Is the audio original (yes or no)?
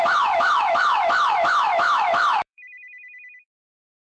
no